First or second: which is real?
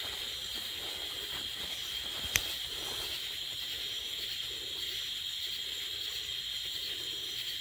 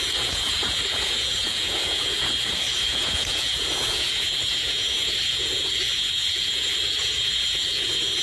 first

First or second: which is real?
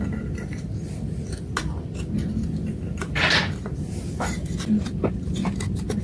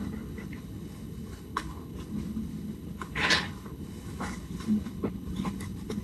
first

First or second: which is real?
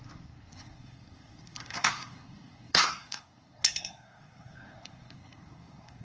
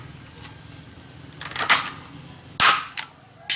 second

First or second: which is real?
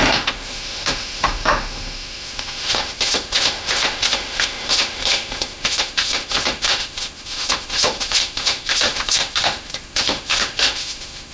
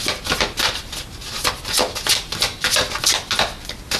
second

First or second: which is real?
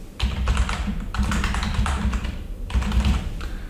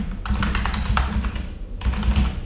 second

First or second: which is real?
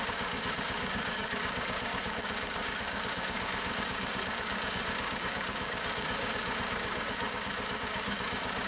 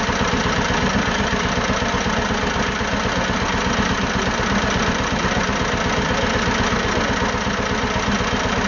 second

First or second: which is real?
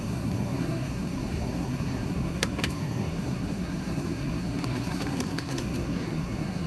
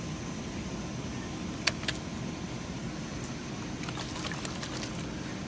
second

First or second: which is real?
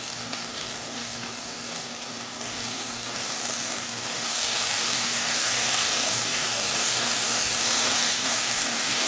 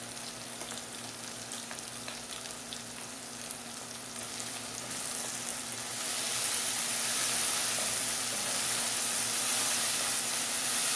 second